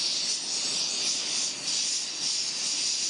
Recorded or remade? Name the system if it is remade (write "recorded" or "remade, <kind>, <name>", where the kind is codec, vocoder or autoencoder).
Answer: recorded